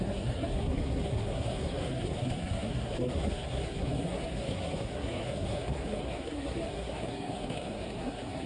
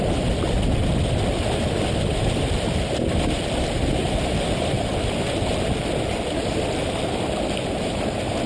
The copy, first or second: first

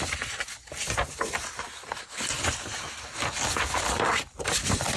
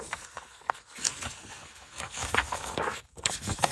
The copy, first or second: second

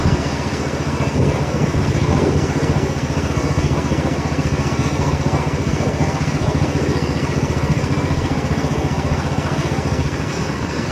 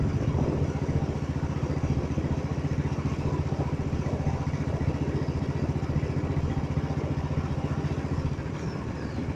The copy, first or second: first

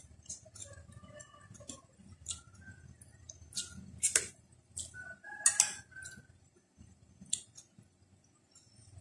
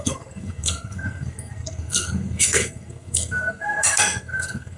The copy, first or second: second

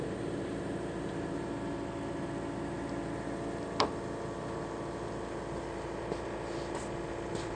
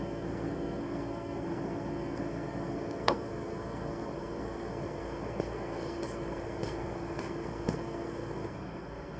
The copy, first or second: second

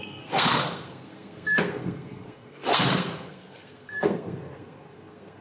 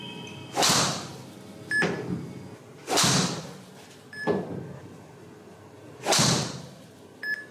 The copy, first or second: first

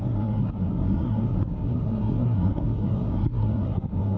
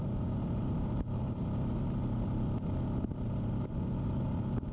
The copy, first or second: first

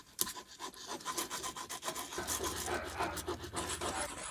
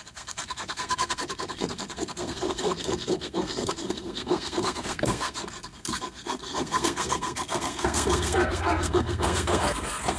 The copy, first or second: second